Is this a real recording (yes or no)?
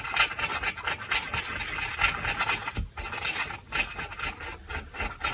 yes